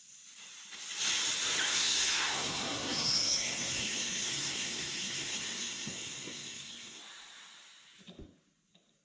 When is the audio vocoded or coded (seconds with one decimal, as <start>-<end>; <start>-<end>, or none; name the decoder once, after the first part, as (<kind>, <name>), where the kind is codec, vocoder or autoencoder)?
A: 1.7-7.0 (codec, SNAC)